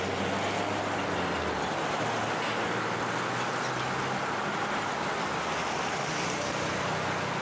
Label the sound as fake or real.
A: real